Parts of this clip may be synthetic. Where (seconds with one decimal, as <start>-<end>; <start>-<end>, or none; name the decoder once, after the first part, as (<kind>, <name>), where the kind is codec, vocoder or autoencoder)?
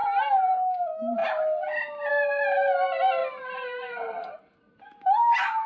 none